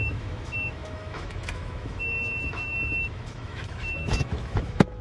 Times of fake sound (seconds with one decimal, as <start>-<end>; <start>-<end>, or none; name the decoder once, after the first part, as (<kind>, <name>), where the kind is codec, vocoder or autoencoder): 0.0-5.0 (autoencoder, DAC-VAE)